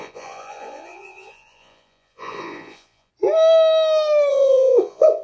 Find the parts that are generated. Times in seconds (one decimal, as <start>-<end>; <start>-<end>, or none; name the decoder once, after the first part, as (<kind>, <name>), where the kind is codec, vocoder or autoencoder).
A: 0.0-3.1 (vocoder, Vocos); 4.3-5.2